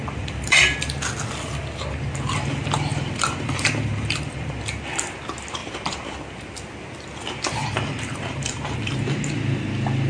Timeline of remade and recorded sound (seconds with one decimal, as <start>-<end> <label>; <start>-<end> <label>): 0.0-0.6 remade; 0.6-2.9 recorded; 2.9-4.6 remade; 4.6-5.6 recorded; 5.6-6.1 remade; 6.1-7.6 recorded; 7.6-8.9 remade; 8.9-10.1 recorded